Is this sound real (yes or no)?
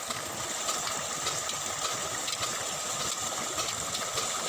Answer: yes